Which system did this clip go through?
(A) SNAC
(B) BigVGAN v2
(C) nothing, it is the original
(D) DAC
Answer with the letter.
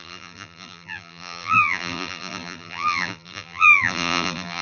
B